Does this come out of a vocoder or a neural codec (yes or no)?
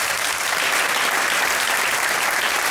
yes